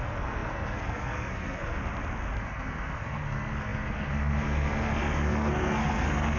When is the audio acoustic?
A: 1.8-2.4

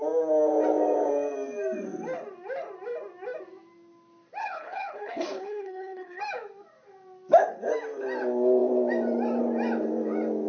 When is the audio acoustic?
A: 0.0-4.4; 6.2-10.5

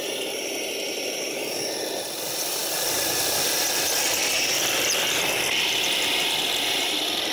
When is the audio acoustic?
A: none